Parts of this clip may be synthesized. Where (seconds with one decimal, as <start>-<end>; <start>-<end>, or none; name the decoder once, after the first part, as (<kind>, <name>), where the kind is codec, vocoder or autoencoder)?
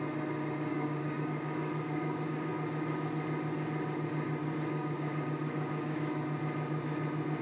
0.7-2.5 (codec, DAC); 4.4-6.0